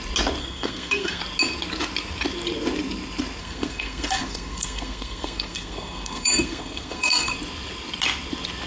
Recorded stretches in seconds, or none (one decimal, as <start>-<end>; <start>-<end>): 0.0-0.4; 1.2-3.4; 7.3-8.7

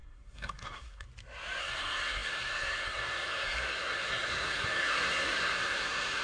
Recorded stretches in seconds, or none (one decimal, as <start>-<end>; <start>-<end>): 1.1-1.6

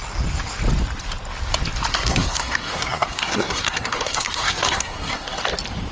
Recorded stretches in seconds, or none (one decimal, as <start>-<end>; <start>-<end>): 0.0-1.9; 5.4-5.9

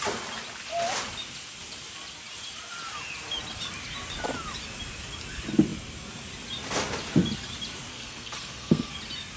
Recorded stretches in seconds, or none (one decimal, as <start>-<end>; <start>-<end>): 0.0-7.9; 8.9-9.4

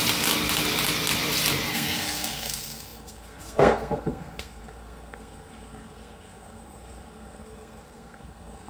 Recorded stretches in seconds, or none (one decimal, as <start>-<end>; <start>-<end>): 0.0-1.7

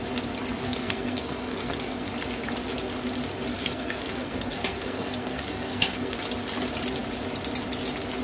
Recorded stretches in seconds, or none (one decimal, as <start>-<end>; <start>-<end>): 0.0-0.6; 2.1-3.5; 6.2-8.2